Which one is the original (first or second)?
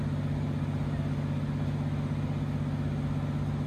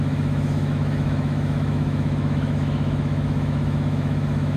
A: first